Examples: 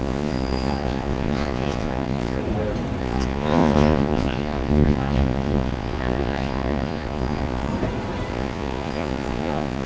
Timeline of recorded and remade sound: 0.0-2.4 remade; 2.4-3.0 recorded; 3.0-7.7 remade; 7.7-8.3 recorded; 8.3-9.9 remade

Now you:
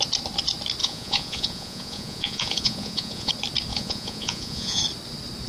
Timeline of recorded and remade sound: 0.0-0.8 recorded; 0.8-3.3 remade; 3.3-3.7 recorded; 3.7-4.8 remade; 4.8-5.5 recorded